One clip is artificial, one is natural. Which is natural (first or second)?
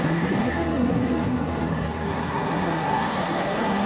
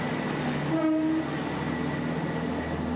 second